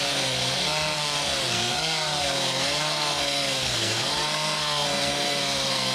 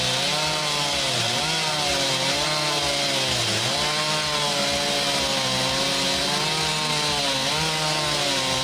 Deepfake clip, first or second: first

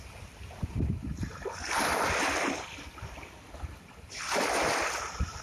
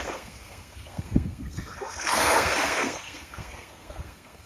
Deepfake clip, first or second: second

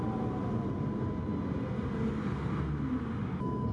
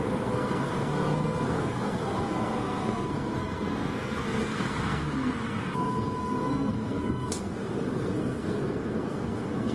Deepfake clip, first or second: second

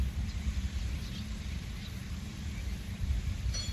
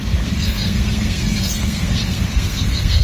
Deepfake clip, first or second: second